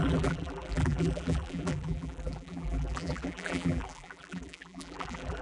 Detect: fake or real fake